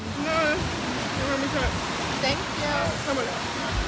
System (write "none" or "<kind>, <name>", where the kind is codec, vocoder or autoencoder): none